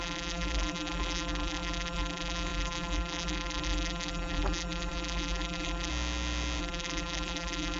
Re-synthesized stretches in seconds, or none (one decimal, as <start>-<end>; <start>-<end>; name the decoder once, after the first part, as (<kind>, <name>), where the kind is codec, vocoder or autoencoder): 0.0-5.9 (vocoder, BigVGAN v2); 6.6-7.8